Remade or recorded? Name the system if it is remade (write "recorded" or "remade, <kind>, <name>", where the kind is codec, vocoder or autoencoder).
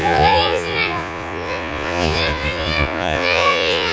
remade, vocoder, Vocos